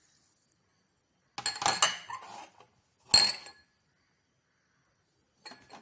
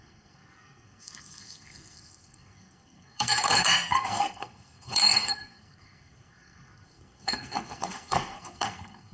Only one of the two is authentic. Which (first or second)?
first